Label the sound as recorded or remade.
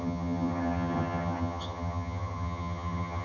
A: remade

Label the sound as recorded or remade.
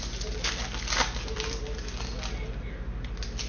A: recorded